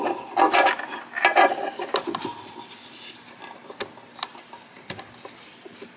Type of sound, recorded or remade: recorded